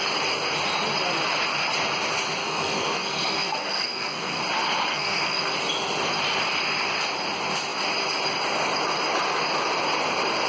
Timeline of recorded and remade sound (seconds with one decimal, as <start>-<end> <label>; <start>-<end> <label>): 0.0-2.4 recorded; 2.4-4.4 remade; 4.4-4.9 recorded; 4.9-5.4 remade; 5.4-10.5 recorded